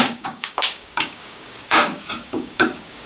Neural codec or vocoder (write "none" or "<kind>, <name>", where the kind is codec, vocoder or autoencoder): codec, DAC